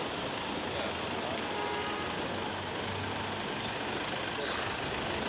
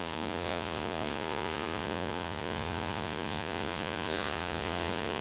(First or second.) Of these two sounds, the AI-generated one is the second